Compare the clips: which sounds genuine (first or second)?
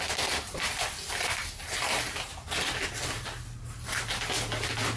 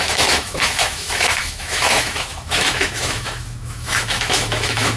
first